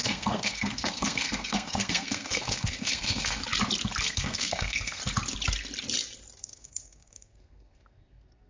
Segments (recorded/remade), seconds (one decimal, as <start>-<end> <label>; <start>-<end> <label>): 0.0-3.4 remade; 3.4-4.0 recorded; 4.0-5.0 remade; 5.0-6.4 recorded; 6.4-8.5 remade